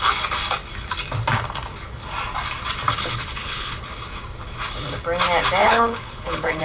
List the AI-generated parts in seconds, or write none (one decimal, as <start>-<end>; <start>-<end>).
3.0-3.8; 5.6-6.6